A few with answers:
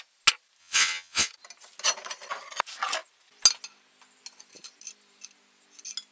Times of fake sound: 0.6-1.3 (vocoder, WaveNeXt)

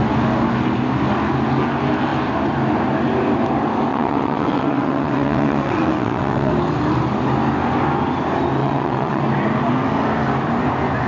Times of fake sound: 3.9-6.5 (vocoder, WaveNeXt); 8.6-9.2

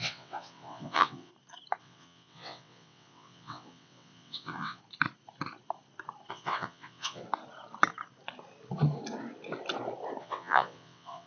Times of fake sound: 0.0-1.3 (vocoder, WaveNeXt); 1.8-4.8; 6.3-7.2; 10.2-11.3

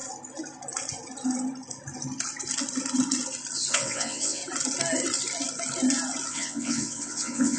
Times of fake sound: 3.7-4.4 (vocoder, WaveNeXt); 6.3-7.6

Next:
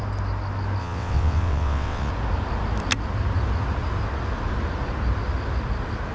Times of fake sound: 0.8-2.1 (vocoder, WaveNeXt)

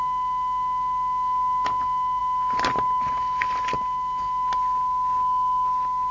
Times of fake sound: none